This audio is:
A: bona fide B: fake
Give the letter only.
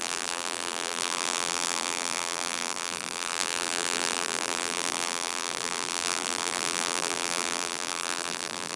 B